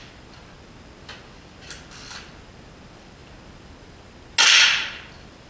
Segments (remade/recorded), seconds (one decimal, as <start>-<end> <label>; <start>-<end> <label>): 0.0-5.5 recorded